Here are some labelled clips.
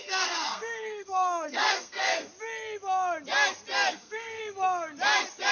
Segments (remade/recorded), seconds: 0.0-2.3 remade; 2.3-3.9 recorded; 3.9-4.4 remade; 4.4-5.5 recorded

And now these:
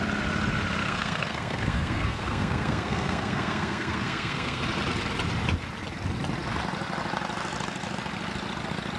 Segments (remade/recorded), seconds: 0.0-0.8 recorded; 0.8-4.6 remade; 4.6-9.0 recorded

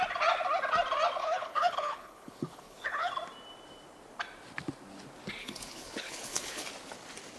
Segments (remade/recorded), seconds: 0.0-1.2 recorded; 1.2-3.1 remade; 3.1-5.4 recorded; 5.4-6.7 remade; 6.7-7.4 recorded

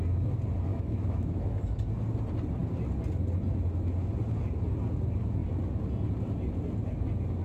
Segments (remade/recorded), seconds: 0.0-0.7 recorded; 0.7-1.8 remade; 1.8-7.4 recorded